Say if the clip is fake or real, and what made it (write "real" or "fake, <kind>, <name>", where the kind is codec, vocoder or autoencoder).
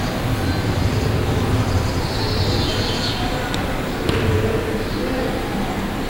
real